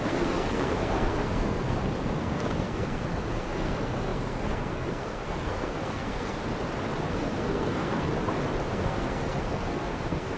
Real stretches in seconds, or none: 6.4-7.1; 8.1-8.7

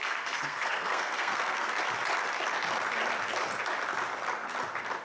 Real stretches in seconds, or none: 1.8-5.0